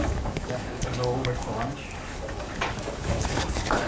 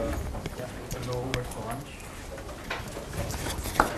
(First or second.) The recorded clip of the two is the second